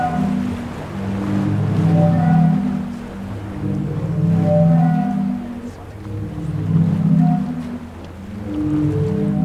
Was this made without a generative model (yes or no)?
yes